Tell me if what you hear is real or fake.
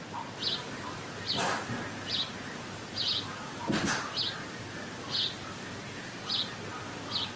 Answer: real